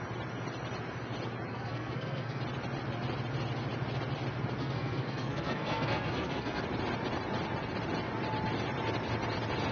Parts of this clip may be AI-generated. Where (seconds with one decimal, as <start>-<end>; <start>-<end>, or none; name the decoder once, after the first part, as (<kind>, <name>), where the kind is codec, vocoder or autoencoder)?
1.5-2.4 (codec, SNAC); 4.6-6.6